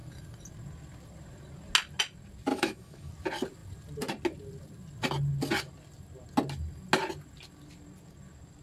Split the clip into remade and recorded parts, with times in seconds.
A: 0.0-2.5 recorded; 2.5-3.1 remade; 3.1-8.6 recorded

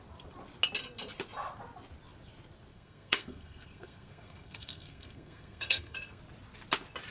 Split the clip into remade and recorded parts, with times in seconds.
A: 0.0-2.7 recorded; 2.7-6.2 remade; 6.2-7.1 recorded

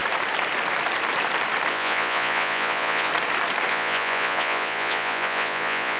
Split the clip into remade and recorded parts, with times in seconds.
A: 0.0-1.7 recorded; 1.7-3.1 remade; 3.1-3.7 recorded; 3.7-6.0 remade

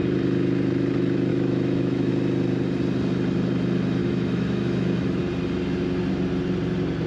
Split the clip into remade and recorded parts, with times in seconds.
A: 0.0-1.3 recorded; 1.3-2.1 remade; 2.1-4.0 recorded; 4.0-5.2 remade; 5.2-7.1 recorded

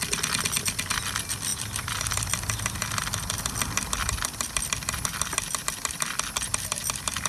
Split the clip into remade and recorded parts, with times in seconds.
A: 0.0-7.3 recorded